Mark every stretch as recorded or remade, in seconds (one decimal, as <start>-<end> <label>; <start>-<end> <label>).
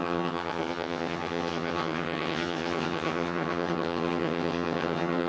0.0-5.3 remade